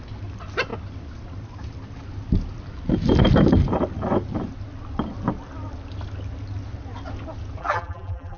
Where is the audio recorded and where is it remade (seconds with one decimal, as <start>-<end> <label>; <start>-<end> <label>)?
0.0-7.6 recorded; 7.6-8.4 remade